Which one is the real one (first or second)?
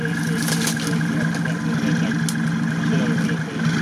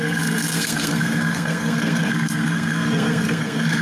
first